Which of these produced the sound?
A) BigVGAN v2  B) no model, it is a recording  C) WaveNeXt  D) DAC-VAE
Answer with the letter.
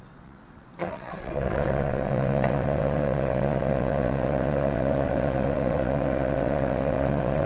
C